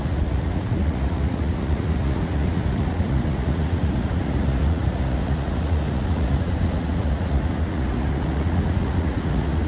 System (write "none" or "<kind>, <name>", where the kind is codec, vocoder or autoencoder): vocoder, Vocos